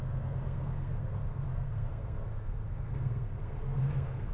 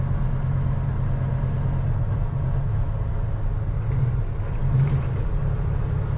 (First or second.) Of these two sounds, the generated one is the first